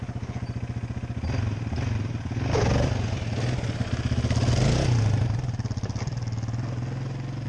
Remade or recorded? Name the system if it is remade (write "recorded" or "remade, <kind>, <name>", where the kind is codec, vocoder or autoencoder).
recorded